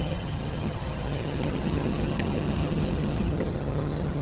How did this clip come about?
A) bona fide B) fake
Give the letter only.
B